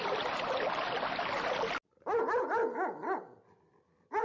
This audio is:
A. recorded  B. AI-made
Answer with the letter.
A